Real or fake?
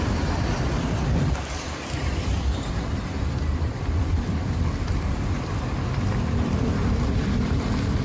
fake